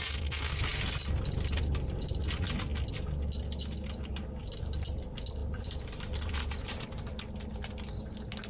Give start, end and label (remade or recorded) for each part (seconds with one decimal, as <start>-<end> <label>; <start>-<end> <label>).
0.0-5.4 recorded; 5.4-6.9 remade; 6.9-8.5 recorded